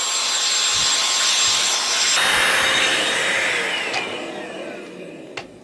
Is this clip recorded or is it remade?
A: recorded